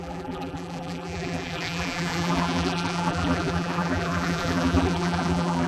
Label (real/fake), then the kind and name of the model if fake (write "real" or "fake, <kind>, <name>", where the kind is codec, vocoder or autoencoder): fake, vocoder, BigVGAN v2